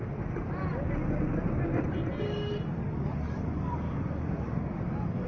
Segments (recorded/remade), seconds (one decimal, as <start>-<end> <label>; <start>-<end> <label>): 0.0-2.8 recorded; 2.8-4.8 remade; 4.8-5.3 recorded

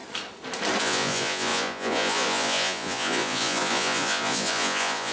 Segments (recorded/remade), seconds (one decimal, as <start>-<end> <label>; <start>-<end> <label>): 0.0-0.8 recorded; 0.8-5.1 remade